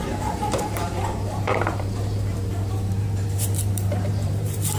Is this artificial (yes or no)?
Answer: yes